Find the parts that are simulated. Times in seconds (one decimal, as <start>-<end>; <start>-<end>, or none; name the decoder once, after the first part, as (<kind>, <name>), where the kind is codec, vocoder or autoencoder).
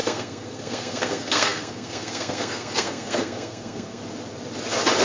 0.0-4.0 (codec, SNAC)